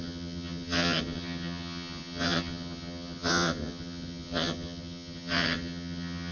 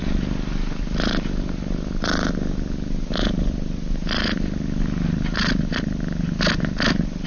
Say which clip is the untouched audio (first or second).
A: second